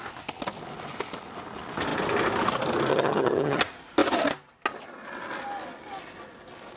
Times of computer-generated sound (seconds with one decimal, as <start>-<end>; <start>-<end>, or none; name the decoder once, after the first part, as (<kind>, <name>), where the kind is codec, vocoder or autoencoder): 2.9-3.6 (vocoder, HiFi-GAN)